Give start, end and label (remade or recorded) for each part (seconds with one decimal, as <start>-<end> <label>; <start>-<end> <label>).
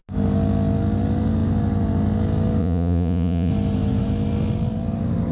0.0-2.6 recorded; 2.6-3.5 remade; 3.5-5.3 recorded